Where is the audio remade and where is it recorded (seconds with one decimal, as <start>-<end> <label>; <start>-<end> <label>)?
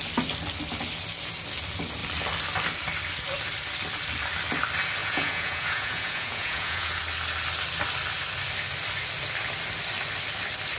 0.0-5.0 recorded; 5.0-7.0 remade; 7.0-10.8 recorded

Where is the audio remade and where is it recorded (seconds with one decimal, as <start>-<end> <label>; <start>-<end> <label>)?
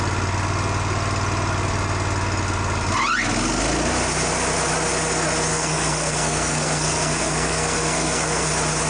0.0-5.5 recorded; 5.5-8.5 remade; 8.5-8.9 recorded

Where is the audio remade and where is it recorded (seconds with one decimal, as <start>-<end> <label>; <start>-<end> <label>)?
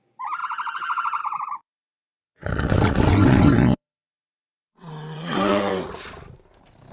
0.0-1.6 recorded; 1.6-5.7 remade; 5.7-6.9 recorded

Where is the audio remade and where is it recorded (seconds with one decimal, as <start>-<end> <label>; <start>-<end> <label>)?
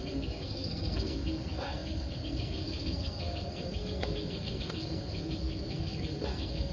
0.0-6.7 remade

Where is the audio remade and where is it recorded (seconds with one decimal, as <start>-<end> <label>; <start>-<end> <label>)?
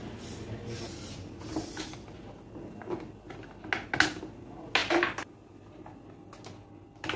0.0-7.2 recorded